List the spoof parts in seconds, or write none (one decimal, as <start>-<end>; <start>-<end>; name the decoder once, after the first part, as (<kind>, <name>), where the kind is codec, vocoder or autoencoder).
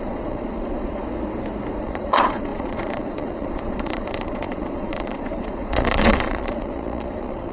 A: 0.0-1.0 (vocoder, Vocos); 1.8-7.5